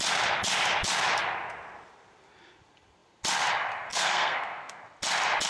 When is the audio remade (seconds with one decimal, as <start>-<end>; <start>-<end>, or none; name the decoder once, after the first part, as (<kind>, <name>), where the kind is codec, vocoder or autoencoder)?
3.9-4.8 (codec, SNAC)